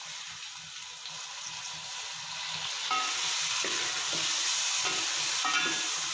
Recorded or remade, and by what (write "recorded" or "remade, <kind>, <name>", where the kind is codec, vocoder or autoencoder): recorded